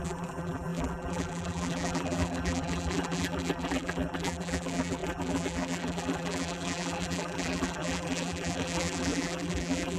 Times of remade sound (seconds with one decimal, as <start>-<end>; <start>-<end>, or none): 0.0-10.0